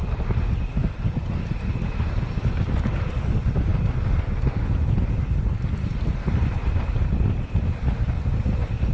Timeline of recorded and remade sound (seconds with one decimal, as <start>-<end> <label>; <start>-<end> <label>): 0.0-8.9 recorded